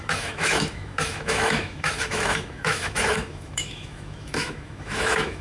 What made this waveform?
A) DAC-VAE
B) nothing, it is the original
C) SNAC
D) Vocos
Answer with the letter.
A